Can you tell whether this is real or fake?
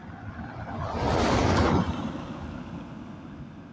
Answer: real